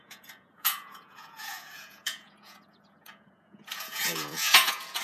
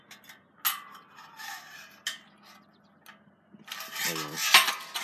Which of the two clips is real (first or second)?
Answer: second